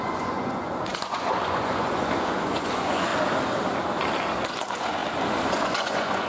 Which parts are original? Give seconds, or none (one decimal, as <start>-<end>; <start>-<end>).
3.1-4.4; 5.0-5.5